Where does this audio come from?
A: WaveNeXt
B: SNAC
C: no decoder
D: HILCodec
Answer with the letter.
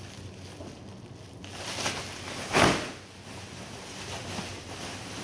C